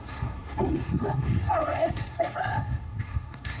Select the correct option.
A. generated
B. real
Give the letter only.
A